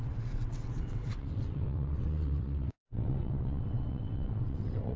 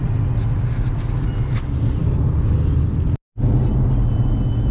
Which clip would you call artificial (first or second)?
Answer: first